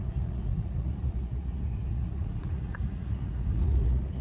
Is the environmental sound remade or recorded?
remade